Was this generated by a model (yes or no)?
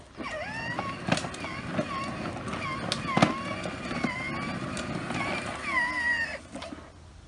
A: no